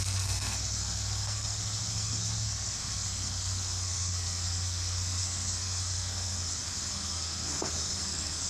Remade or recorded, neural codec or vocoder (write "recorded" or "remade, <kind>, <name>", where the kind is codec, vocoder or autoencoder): remade, codec, SNAC